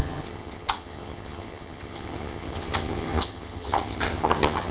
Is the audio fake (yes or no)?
yes